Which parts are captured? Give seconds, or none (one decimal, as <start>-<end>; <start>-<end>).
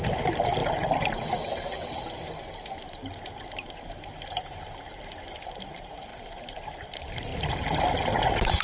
0.0-8.6